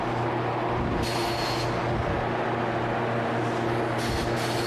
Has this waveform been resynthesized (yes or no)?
no